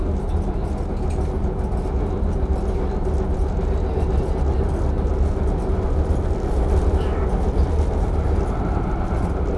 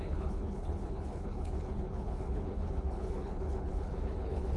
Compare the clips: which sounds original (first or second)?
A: first